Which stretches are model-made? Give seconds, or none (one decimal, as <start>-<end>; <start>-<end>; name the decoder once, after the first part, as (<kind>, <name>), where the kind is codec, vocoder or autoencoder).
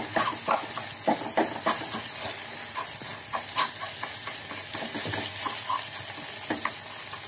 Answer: none